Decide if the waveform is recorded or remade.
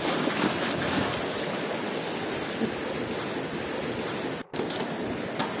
recorded